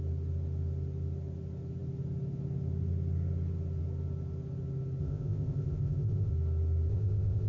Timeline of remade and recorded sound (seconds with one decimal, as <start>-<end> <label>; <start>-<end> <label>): 0.0-5.0 recorded; 5.0-6.3 remade; 6.3-6.9 recorded; 6.9-7.5 remade